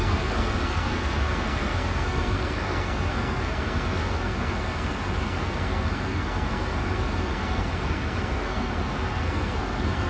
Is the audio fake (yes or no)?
yes